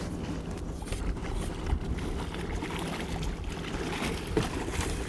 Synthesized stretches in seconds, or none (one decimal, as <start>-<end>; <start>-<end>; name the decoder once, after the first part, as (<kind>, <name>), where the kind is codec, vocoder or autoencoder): none

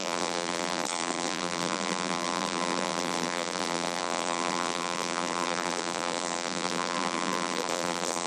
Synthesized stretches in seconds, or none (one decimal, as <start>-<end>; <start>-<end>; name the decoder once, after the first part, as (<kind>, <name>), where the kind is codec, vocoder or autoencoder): 0.0-8.3 (vocoder, BigVGAN v2)

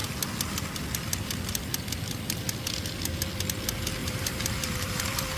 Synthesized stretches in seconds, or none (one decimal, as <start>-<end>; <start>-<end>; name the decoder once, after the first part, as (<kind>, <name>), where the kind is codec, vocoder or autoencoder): 4.0-5.0 (vocoder, BigVGAN v2)

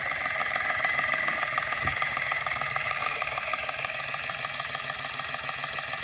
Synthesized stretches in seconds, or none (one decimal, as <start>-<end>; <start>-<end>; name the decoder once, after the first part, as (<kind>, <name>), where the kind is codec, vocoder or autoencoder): 0.4-4.0 (codec, DAC)

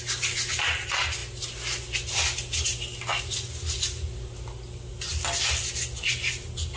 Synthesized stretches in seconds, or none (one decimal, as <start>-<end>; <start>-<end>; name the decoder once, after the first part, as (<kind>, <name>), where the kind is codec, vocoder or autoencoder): none

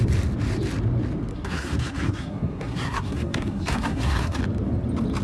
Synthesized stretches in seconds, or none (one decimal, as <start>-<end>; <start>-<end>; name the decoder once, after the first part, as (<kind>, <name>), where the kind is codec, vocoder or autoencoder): 1.3-4.4 (codec, SNAC)